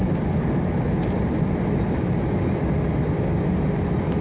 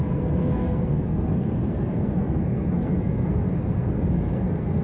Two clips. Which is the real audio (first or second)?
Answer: first